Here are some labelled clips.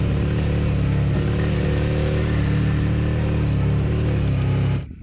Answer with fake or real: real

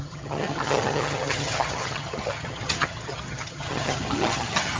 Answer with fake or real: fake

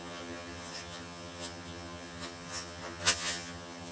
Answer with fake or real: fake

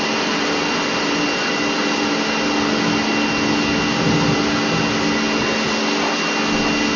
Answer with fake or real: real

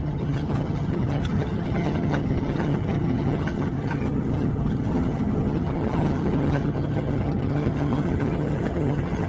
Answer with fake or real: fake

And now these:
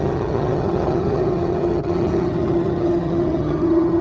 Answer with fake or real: fake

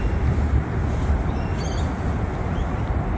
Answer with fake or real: real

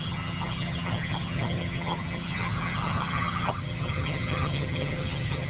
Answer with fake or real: fake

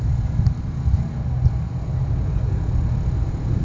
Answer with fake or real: real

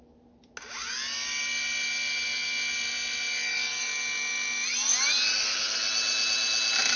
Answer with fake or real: real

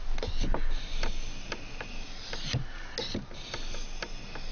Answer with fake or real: real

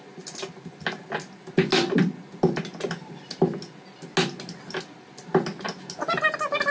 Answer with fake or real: real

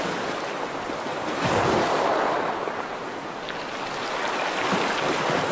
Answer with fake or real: real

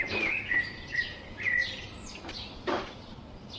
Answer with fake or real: real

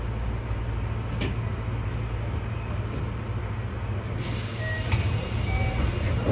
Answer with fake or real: real